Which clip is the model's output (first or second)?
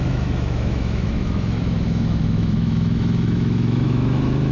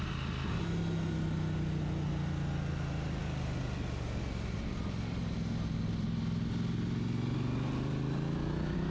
first